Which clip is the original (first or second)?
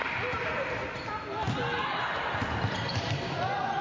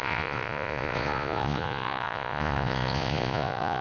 first